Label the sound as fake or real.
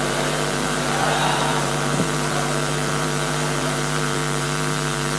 fake